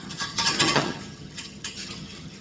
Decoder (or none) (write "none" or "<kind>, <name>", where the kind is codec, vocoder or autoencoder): vocoder, HiFi-GAN